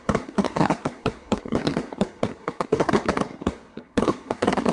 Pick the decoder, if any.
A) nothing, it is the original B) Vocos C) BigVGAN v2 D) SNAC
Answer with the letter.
D